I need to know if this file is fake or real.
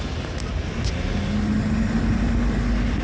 real